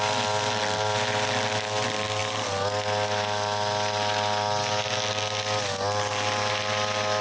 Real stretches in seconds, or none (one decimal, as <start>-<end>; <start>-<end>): 0.0-7.2